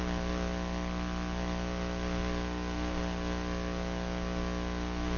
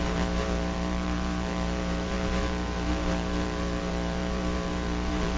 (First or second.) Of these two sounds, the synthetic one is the second